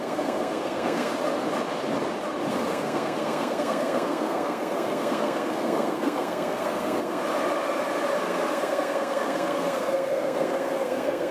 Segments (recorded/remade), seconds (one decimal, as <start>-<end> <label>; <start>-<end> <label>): 0.0-1.1 remade; 1.1-2.5 recorded; 2.5-7.2 remade; 7.2-8.2 recorded; 8.2-11.3 remade